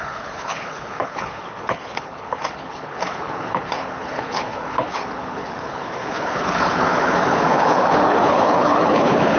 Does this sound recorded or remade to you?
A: remade